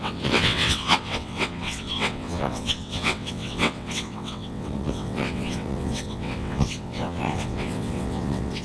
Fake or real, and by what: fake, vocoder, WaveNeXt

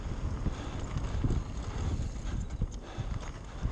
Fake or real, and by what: real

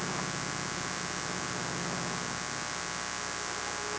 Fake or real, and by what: real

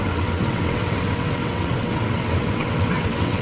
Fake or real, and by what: fake, vocoder, WaveNeXt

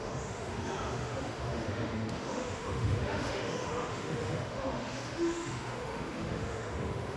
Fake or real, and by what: fake, autoencoder, DAC-VAE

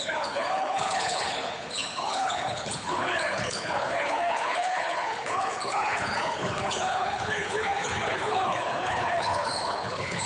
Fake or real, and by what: fake, codec, HILCodec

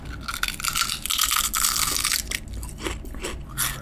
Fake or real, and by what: real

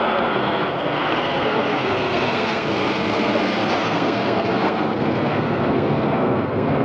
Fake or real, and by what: fake, codec, SNAC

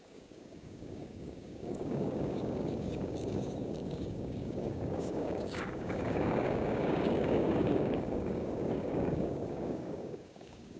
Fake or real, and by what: fake, codec, DAC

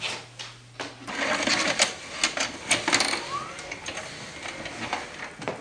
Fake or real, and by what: real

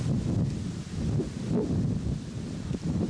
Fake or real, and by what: real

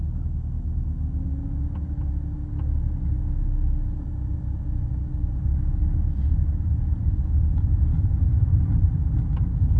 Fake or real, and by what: real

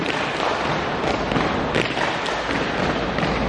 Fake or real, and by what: real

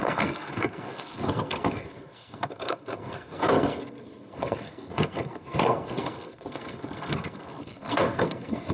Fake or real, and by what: fake, codec, SNAC